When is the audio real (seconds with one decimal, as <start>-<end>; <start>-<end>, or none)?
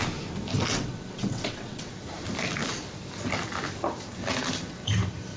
0.0-0.7; 1.9-5.4